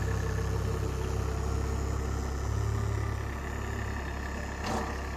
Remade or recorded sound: recorded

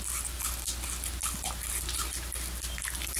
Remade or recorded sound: recorded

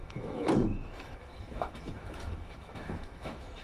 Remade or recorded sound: remade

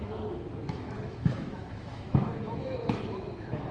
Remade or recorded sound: remade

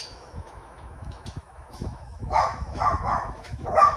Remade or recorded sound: remade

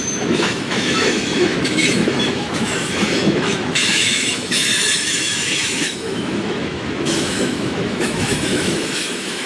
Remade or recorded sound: remade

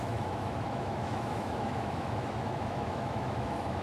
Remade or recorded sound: remade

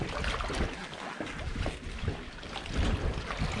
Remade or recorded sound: recorded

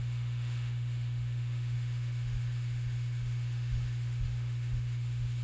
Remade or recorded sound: remade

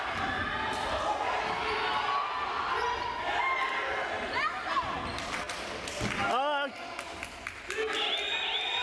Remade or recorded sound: recorded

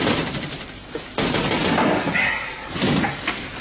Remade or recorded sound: recorded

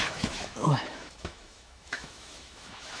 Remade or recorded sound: remade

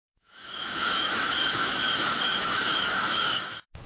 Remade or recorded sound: remade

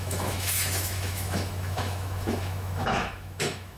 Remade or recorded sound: remade